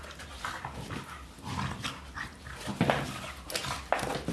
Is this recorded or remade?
recorded